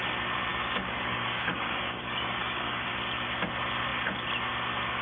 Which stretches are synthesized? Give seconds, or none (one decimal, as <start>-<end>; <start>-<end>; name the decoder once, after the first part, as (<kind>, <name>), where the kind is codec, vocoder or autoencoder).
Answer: 0.5-2.9 (codec, DAC)